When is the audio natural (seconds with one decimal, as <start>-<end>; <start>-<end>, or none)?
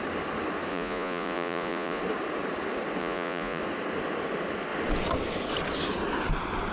0.0-0.7; 2.0-3.0; 3.6-6.7